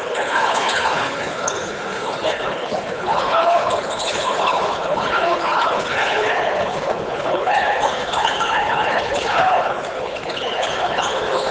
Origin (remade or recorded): remade